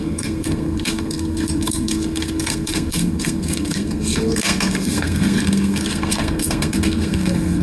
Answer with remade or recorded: remade